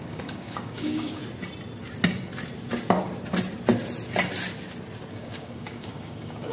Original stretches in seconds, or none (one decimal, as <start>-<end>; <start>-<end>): 1.2-5.1